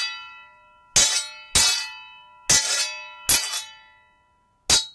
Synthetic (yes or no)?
no